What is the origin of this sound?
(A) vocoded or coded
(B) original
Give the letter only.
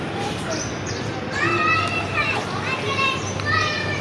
B